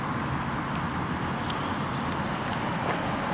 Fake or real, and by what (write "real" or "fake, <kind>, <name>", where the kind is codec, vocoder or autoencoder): real